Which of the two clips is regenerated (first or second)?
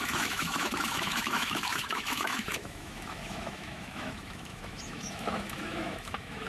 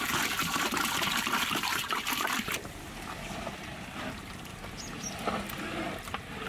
first